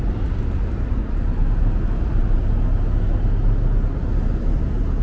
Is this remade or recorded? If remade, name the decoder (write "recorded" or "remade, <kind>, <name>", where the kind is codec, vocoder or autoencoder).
recorded